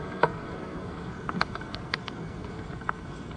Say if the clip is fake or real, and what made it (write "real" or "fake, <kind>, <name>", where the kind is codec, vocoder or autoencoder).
fake, codec, SNAC